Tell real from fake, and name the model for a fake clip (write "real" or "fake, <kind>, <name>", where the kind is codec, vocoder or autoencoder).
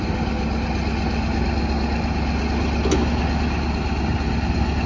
real